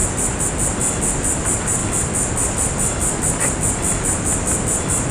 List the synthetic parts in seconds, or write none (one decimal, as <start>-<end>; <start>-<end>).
none